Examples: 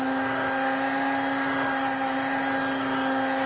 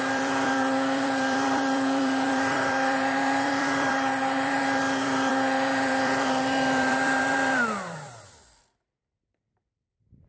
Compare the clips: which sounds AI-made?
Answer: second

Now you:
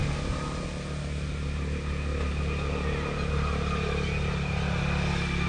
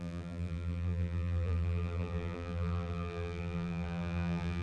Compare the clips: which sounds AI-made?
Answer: second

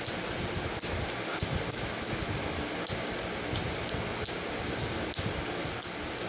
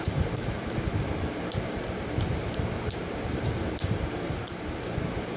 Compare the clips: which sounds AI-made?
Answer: second